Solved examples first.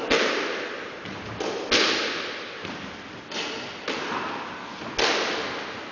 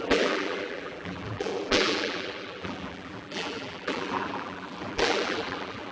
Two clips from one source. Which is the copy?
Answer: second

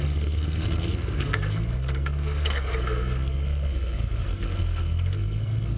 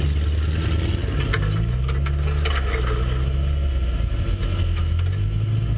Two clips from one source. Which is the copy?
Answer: first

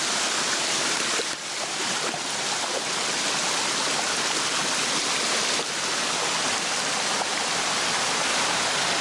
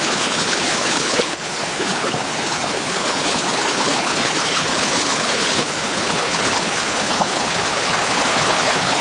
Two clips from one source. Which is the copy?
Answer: second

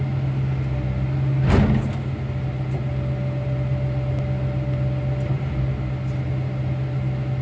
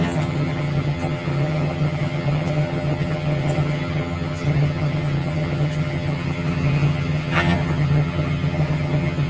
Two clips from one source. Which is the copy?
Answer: second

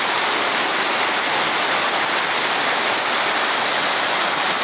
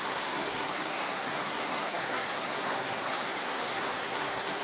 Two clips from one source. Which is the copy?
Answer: second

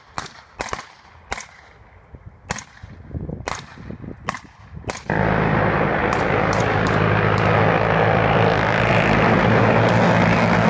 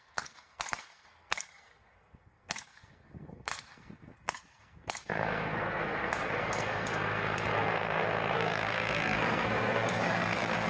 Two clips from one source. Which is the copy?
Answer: second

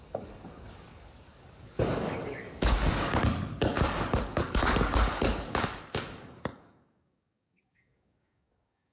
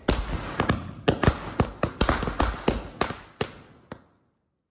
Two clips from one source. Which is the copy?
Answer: first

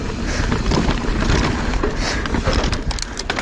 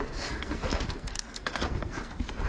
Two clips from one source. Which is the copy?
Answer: second